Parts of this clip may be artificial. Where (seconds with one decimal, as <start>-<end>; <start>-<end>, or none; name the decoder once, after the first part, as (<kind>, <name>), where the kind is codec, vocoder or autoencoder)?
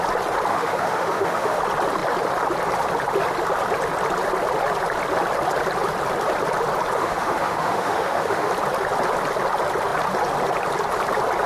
0.5-1.6 (autoencoder, DAC-VAE); 7.0-8.5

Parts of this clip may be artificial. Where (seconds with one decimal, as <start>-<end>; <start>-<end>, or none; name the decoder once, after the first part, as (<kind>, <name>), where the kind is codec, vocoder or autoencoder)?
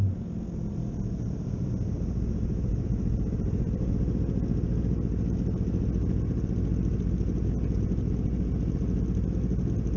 none